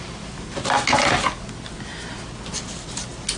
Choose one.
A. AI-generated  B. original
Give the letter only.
B